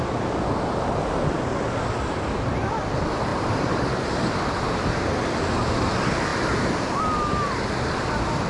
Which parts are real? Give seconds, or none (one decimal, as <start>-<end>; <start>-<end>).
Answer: 0.0-3.3; 5.1-8.5